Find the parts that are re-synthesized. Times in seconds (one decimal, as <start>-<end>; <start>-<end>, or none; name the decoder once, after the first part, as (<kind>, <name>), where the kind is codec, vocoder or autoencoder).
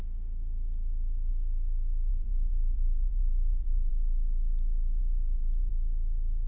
2.1-3.9 (vocoder, BigVGAN v2); 5.0-5.7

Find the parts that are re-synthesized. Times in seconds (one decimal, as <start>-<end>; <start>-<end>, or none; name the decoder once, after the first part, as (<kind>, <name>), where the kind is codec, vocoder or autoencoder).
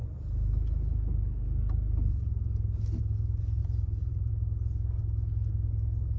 3.6-4.3 (vocoder, BigVGAN v2)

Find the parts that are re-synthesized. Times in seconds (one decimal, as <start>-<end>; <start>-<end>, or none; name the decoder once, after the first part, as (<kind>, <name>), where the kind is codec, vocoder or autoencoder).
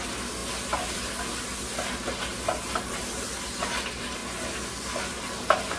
none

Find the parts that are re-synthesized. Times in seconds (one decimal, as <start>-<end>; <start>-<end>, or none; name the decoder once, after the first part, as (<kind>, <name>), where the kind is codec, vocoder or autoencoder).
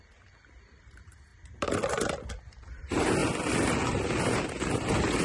0.0-1.3 (vocoder, BigVGAN v2); 2.8-3.2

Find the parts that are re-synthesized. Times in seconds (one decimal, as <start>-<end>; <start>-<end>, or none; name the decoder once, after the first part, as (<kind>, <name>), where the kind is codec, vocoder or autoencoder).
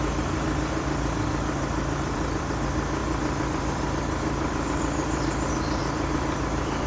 0.0-6.9 (vocoder, BigVGAN v2)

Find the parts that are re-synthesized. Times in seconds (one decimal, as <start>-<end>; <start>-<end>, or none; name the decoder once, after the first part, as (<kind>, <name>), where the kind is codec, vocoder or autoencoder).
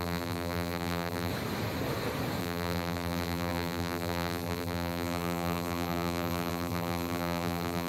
0.0-1.3 (vocoder, BigVGAN v2); 2.4-7.9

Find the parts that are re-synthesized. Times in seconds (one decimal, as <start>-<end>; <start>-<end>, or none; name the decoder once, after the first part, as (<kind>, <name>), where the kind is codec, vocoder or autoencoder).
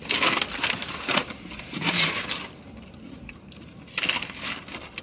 0.8-3.7 (vocoder, BigVGAN v2)